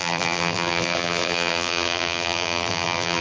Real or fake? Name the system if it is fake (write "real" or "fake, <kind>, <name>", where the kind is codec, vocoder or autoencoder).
fake, vocoder, BigVGAN v2